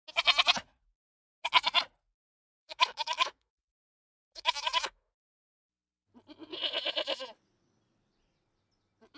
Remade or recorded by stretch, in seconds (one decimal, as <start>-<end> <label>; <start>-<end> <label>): 0.0-2.2 recorded; 2.2-5.4 remade; 5.4-9.2 recorded